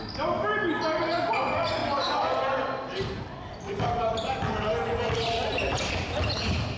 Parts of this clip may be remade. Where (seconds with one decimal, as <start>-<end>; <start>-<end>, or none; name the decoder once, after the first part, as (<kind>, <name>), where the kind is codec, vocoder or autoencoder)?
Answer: none